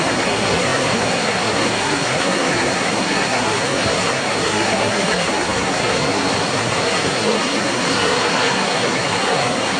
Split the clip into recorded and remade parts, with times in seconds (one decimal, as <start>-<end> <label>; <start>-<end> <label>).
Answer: 0.0-9.8 remade